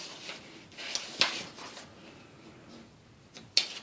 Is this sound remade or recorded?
recorded